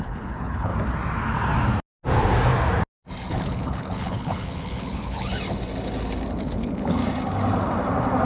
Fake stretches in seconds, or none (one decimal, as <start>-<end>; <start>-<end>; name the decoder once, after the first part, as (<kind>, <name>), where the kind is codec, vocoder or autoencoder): 0.0-0.7 (codec, HILCodec); 3.3-5.3; 6.4-7.0